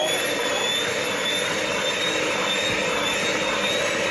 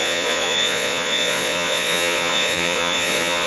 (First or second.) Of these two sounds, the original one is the first